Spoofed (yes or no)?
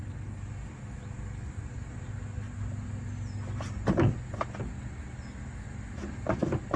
no